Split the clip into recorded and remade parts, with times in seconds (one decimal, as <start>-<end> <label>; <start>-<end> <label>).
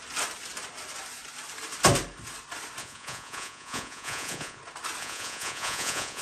0.0-2.8 recorded; 2.8-4.6 remade; 4.6-5.0 recorded; 5.0-6.2 remade